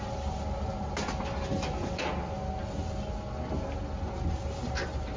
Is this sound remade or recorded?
recorded